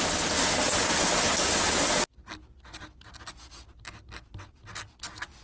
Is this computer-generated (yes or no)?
no